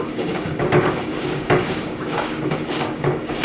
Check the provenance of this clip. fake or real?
fake